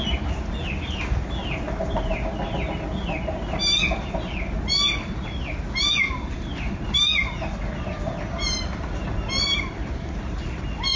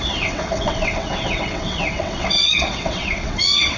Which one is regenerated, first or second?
second